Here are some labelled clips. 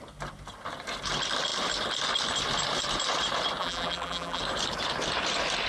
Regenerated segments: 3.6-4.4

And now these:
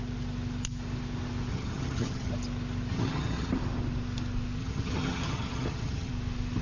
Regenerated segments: 1.5-2.3; 2.9-3.5; 4.6-6.1

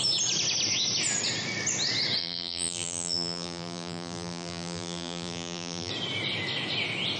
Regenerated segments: 2.2-5.9